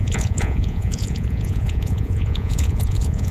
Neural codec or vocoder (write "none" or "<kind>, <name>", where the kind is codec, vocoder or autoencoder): vocoder, Vocos